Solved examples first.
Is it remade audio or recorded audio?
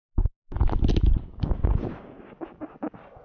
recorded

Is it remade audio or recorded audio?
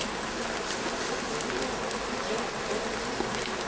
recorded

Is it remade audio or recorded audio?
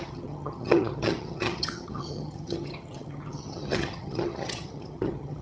remade